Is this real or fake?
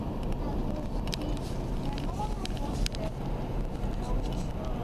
real